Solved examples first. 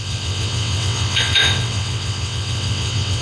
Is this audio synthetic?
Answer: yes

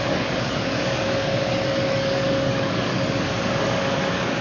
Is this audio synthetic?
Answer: yes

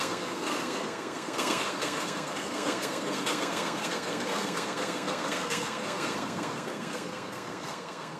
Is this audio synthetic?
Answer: yes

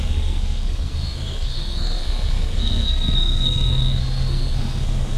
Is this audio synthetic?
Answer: yes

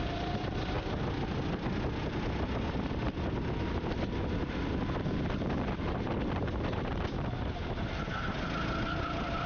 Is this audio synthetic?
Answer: no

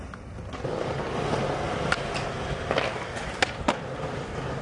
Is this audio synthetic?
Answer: no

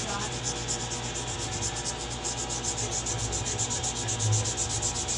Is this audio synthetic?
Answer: no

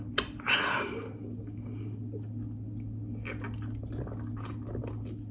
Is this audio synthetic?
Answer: no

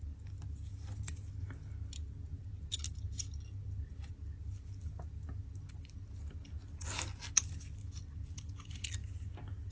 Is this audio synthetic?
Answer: no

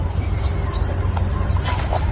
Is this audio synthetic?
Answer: no